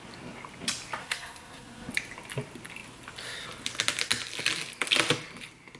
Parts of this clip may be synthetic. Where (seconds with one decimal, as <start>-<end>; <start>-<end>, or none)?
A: 1.0-1.9